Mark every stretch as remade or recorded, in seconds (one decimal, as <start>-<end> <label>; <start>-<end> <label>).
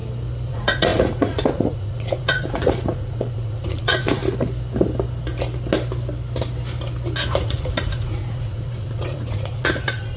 0.0-0.5 recorded; 0.5-4.2 remade; 4.2-7.4 recorded; 7.4-10.2 remade